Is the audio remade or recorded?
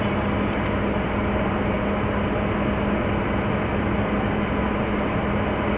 recorded